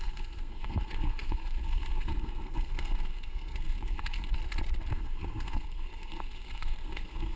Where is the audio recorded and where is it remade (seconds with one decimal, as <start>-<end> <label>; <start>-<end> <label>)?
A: 0.0-4.4 remade; 4.4-4.9 recorded; 4.9-7.4 remade